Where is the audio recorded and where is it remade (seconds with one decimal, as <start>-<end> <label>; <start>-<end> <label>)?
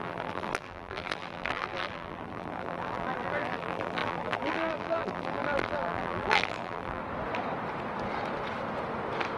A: 0.0-7.0 remade; 7.0-9.4 recorded